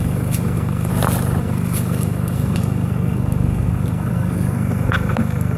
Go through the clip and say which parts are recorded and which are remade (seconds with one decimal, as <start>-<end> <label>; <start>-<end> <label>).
0.0-0.9 remade; 0.9-1.4 recorded; 1.4-5.6 remade